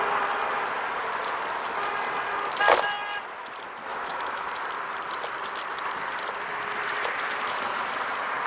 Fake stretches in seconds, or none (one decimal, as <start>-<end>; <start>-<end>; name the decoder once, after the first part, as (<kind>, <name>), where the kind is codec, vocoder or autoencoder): 3.9-4.5 (autoencoder, DAC-VAE)